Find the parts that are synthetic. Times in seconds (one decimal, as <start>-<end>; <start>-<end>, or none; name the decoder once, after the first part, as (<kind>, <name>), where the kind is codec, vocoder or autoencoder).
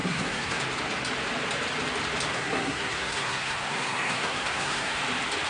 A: 0.0-0.6 (codec, SNAC); 2.3-5.0